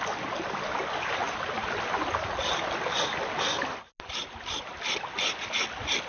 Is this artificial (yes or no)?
no